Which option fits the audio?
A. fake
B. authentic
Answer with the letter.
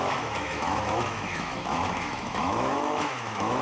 A